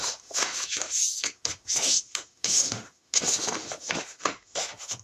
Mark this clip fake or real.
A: fake